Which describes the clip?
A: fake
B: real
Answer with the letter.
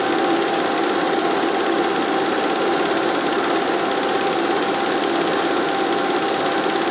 B